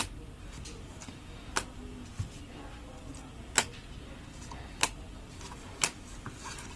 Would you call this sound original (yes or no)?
yes